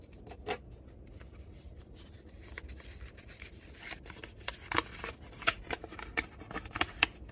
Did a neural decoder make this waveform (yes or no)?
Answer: no